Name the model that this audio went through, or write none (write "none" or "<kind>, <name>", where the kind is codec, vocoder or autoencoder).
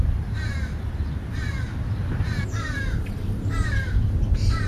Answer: vocoder, BigVGAN v2